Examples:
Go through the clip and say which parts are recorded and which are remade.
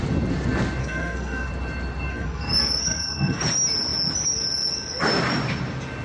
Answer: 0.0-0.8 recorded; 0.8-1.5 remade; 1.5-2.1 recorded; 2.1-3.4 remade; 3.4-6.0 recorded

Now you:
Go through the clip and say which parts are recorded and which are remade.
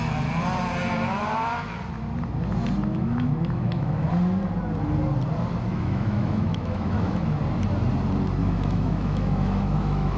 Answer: 0.0-2.9 recorded; 2.9-4.1 remade; 4.1-5.7 recorded; 5.7-7.4 remade; 7.4-8.4 recorded; 8.4-10.2 remade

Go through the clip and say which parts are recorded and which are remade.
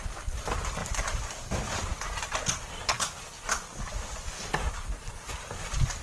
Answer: 0.0-6.0 recorded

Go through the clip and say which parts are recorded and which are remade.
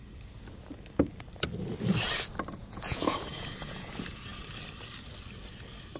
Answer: 0.0-2.6 recorded; 2.6-3.9 remade; 3.9-6.0 recorded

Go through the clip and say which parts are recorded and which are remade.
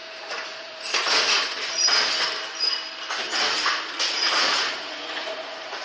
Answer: 0.0-1.9 remade; 1.9-3.4 recorded; 3.4-5.8 remade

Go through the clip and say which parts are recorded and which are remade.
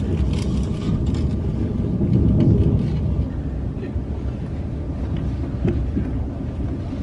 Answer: 0.0-7.0 recorded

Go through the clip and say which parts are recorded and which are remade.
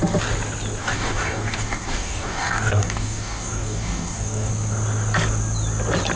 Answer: 0.0-0.8 recorded; 0.8-4.5 remade; 4.5-6.2 recorded